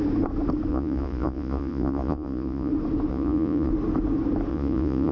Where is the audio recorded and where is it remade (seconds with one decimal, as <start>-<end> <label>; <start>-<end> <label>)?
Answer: 0.0-0.7 recorded; 0.7-2.7 remade; 2.7-3.1 recorded; 3.1-3.7 remade; 3.7-4.5 recorded; 4.5-5.1 remade